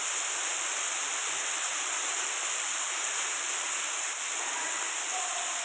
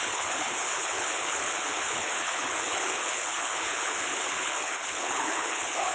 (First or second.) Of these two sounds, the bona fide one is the first